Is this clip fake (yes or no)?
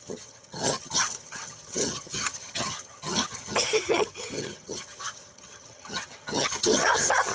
yes